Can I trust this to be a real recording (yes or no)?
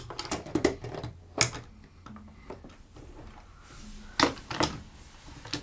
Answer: yes